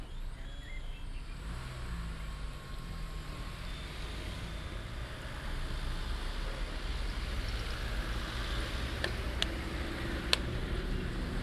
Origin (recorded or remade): recorded